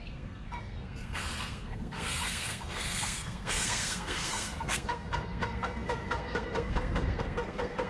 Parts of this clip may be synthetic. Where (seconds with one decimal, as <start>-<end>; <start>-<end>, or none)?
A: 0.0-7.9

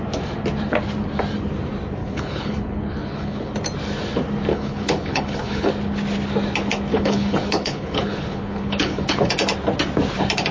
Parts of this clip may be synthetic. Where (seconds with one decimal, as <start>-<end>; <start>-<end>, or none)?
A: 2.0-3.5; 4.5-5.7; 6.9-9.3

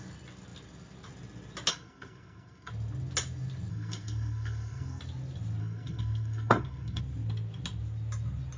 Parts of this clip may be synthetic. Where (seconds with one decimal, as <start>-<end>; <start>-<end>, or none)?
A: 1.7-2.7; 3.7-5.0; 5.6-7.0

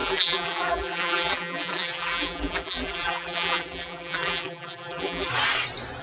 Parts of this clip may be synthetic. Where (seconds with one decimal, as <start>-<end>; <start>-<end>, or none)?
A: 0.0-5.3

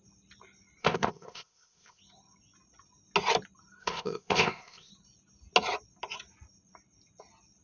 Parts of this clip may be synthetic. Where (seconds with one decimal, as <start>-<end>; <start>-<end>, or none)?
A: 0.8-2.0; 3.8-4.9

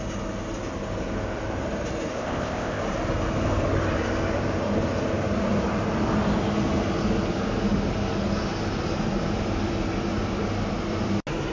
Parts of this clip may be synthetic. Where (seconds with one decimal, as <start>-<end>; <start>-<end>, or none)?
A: 2.1-2.8